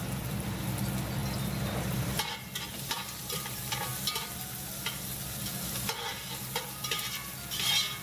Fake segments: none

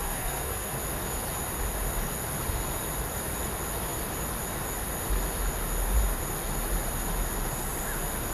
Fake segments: 0.0-0.7

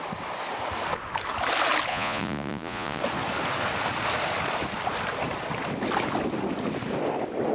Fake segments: 1.9-3.0

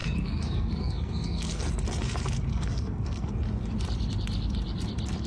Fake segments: 0.0-1.7; 2.5-3.3

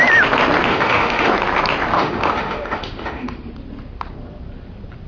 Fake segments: 0.7-1.3; 1.9-3.5

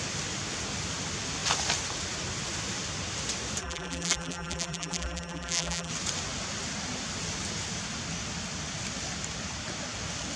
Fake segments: 3.6-5.9

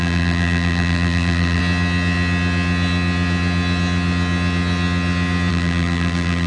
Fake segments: 0.0-1.6; 5.5-6.5